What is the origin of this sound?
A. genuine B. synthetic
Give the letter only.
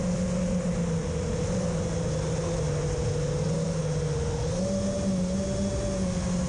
A